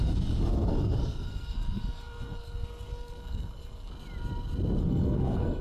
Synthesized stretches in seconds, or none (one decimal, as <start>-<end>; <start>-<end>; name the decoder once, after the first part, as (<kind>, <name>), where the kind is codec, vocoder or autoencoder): 0.0-3.9 (codec, SNAC); 4.8-5.6